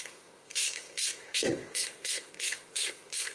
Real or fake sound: fake